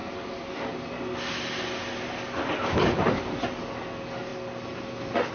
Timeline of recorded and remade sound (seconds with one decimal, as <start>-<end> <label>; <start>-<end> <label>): 0.0-5.3 recorded